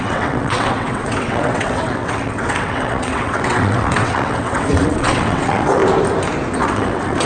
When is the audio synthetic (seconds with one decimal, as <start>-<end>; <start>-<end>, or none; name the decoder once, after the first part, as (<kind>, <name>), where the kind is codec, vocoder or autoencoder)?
0.0-5.8 (vocoder, WaveNeXt); 6.6-7.3